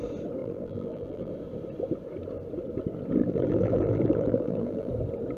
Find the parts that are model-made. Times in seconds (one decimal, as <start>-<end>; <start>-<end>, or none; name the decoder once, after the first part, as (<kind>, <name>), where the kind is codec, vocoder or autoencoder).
0.4-1.3 (vocoder, BigVGAN v2); 3.2-4.9